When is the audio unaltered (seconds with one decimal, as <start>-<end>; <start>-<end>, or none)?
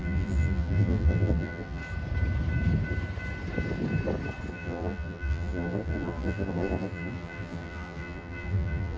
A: 1.8-4.5